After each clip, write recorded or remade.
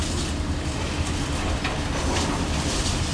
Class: recorded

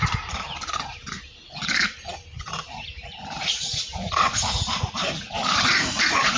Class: recorded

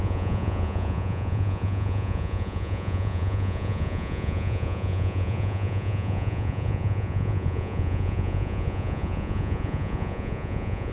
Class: remade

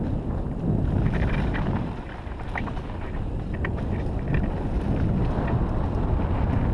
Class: recorded